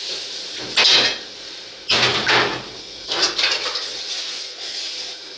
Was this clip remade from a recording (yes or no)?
no